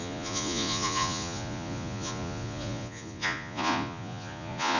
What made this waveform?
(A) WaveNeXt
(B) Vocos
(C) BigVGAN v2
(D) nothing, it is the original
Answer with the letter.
B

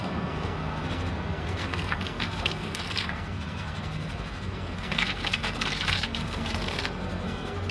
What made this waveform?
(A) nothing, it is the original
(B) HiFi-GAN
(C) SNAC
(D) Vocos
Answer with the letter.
C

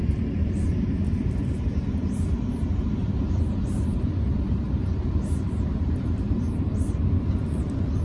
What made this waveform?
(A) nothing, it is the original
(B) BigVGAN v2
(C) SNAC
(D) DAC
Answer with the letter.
B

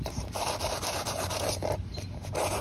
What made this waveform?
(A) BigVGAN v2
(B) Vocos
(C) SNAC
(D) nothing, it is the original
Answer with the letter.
A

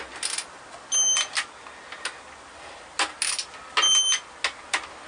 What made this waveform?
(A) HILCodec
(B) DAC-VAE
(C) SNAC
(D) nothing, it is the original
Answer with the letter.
D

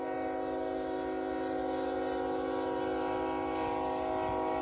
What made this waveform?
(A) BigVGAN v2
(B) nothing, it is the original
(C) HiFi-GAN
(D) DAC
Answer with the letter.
B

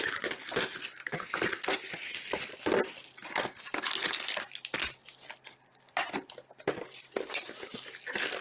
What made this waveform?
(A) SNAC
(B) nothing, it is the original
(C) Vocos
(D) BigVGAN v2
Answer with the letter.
D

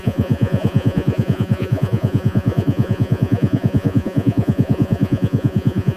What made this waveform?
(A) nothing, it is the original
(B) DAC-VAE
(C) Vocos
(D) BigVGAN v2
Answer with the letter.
C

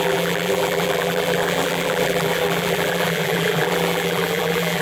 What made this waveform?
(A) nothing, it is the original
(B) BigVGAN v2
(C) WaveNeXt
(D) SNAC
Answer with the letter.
B